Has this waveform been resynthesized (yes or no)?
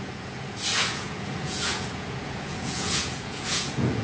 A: yes